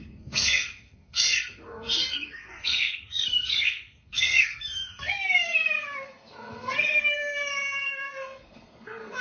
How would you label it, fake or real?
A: fake